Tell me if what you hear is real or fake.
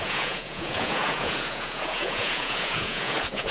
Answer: fake